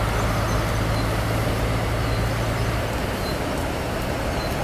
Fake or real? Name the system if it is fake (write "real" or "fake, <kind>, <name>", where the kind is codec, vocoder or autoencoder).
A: real